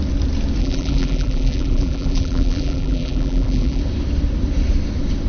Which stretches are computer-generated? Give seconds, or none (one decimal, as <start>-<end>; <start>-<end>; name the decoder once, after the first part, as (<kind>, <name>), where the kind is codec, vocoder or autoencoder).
0.6-3.8 (vocoder, BigVGAN v2)